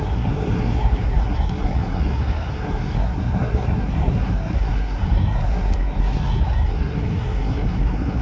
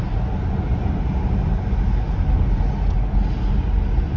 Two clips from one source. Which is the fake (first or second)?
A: first